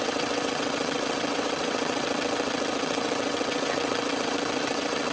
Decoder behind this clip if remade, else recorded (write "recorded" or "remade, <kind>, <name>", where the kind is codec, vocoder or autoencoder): remade, vocoder, WaveNeXt